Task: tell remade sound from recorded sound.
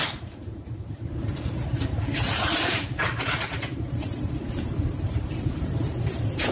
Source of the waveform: remade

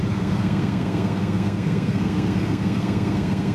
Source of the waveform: remade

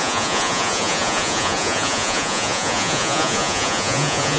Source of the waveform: remade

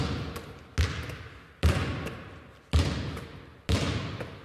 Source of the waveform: recorded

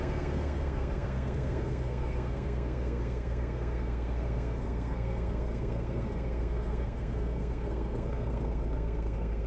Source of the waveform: remade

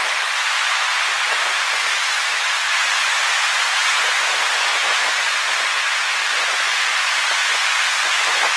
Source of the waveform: remade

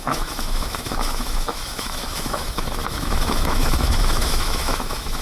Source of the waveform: remade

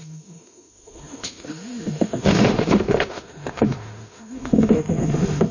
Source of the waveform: remade